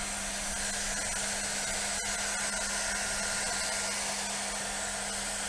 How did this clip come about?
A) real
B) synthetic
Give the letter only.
A